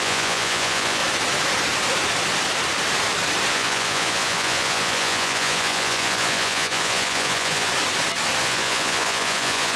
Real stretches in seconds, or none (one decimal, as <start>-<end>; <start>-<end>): 1.0-3.5; 7.7-8.4